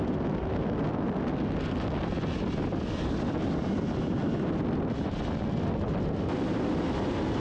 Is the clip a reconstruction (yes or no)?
no